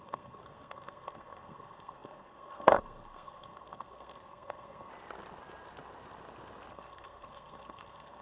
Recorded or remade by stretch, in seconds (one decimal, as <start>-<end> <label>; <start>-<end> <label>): 0.0-4.9 remade; 4.9-6.7 recorded; 6.7-8.2 remade